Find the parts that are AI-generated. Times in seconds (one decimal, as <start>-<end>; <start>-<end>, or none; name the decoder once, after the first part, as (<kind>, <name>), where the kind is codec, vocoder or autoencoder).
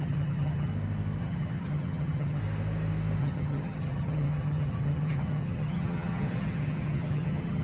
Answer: 0.0-0.7 (vocoder, HiFi-GAN); 1.2-2.4; 3.2-7.6